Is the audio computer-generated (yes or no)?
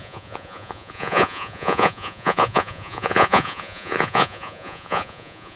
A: yes